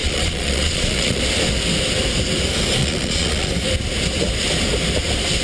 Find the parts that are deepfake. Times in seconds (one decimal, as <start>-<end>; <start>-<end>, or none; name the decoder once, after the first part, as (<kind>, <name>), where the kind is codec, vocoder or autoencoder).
0.0-1.2 (vocoder, Vocos); 2.8-3.5